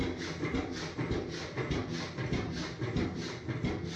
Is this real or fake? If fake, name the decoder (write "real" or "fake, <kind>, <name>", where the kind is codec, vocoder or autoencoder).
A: real